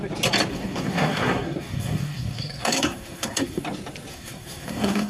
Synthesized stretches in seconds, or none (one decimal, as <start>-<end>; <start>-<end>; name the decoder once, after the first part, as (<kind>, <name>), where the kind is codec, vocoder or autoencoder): 0.5-3.6 (codec, SNAC); 4.1-5.1